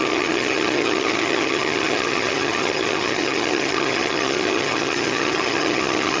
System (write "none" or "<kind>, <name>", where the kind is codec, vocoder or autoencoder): vocoder, HiFi-GAN